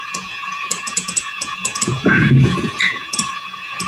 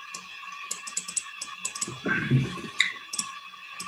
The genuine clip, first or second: second